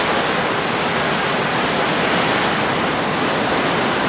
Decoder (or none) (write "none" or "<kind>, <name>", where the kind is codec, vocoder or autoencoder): none